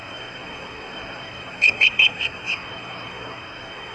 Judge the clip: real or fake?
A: fake